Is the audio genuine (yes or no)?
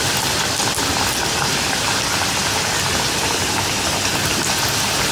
yes